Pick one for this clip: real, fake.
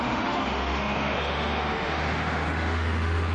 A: fake